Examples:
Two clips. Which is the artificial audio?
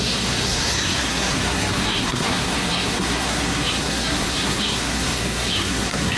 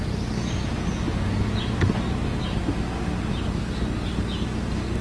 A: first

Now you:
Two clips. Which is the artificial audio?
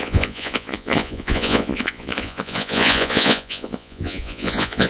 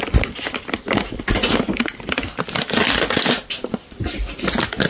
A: first